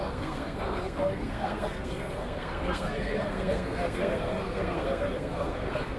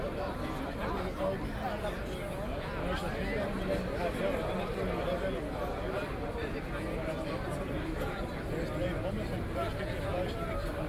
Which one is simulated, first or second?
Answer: first